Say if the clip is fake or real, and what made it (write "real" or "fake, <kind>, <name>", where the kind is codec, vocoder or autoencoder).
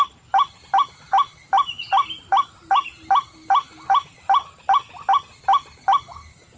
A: real